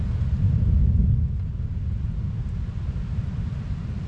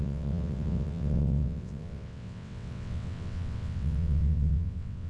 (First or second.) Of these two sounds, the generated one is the second